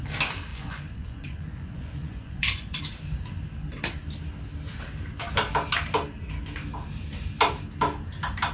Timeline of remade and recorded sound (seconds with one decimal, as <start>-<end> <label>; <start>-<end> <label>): 0.0-0.5 recorded; 0.5-2.8 remade; 2.8-8.5 recorded